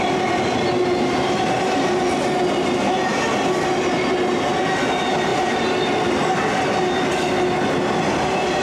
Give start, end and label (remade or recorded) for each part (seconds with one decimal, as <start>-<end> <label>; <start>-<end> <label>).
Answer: 0.0-8.6 recorded